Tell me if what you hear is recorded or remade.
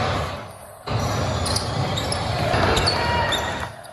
recorded